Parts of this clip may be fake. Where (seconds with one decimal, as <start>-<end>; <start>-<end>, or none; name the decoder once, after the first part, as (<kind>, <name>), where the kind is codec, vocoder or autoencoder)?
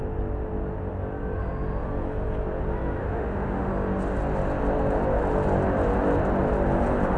3.0-3.7 (autoencoder, DAC-VAE)